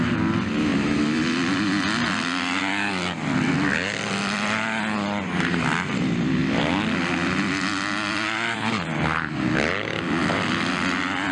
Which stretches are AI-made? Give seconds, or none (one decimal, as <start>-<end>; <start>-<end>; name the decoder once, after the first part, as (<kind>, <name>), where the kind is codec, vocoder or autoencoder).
none